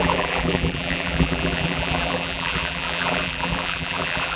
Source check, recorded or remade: remade